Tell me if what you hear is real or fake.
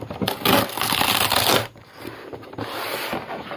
real